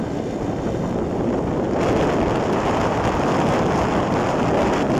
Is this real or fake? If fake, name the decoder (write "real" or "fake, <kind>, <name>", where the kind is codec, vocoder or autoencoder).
real